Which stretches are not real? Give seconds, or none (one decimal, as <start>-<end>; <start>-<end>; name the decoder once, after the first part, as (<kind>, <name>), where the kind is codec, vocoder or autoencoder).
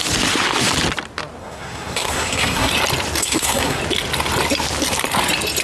1.4-2.7 (codec, SNAC); 3.2-3.8